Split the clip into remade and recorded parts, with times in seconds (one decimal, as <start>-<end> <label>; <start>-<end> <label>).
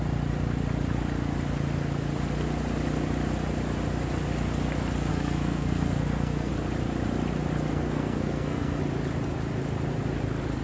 0.0-5.1 recorded; 5.1-6.5 remade; 6.5-7.7 recorded; 7.7-8.8 remade; 8.8-10.6 recorded